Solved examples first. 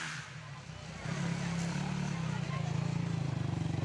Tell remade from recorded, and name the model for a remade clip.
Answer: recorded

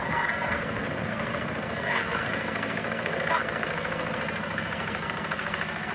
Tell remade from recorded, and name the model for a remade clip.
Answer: remade, codec, SNAC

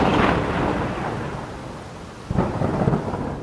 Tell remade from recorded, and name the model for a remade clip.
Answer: recorded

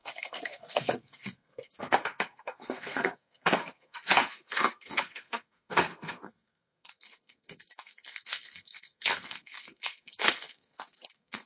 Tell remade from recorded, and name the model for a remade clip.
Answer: remade, codec, SNAC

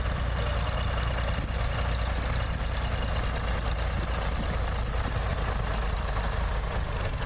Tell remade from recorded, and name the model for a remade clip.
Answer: recorded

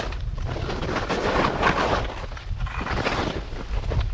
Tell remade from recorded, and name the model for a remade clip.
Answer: recorded